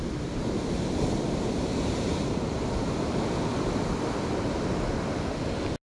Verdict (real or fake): real